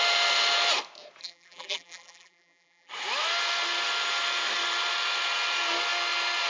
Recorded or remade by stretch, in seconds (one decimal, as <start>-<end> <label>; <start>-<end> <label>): 0.0-1.2 recorded; 1.2-2.9 remade; 2.9-6.5 recorded